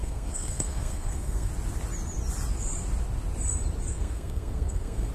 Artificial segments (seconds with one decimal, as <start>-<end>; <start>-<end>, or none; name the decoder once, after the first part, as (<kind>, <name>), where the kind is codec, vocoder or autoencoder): 0.0-1.5 (codec, SNAC); 3.9-5.1